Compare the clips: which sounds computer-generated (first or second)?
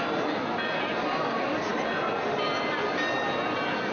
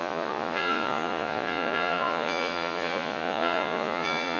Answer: second